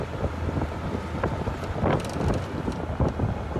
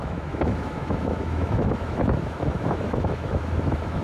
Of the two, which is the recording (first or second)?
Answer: first